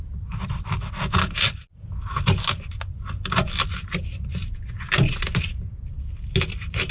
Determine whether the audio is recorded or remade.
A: recorded